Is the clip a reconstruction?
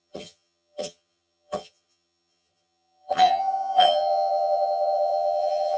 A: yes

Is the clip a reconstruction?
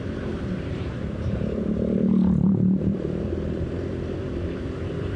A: yes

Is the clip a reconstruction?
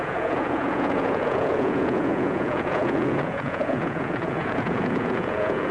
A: yes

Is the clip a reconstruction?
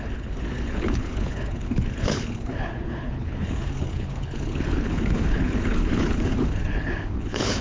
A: yes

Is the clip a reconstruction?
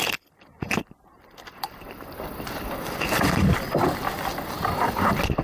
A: no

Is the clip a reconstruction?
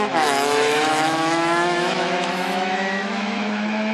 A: yes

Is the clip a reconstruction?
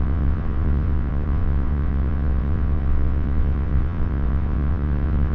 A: yes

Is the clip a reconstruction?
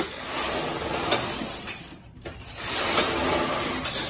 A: no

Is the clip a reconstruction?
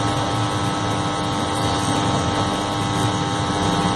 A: no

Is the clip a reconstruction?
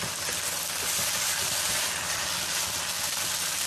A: no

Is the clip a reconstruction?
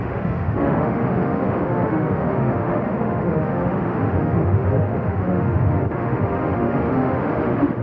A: yes